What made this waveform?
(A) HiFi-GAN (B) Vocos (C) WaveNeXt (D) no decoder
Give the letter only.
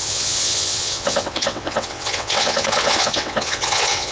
C